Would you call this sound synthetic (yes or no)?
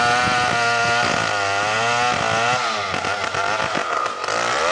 no